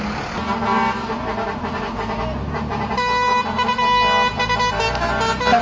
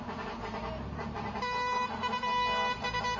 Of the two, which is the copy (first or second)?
second